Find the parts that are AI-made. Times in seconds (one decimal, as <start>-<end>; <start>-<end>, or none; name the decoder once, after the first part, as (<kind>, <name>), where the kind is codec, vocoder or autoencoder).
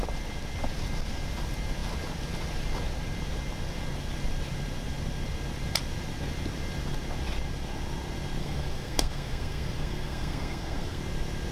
8.4-11.0 (codec, SNAC)